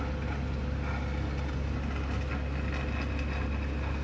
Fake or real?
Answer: real